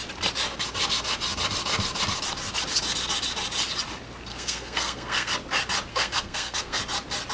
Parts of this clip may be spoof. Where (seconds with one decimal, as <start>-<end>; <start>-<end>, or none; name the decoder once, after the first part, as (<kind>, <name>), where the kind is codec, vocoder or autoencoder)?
4.3-5.3 (codec, SNAC); 5.9-6.8